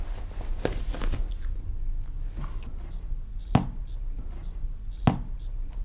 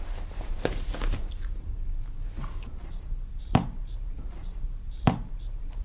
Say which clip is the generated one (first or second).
second